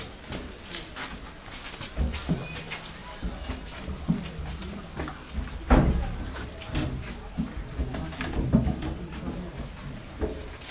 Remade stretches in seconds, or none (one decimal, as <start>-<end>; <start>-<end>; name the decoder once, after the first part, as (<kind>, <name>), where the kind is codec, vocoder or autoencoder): none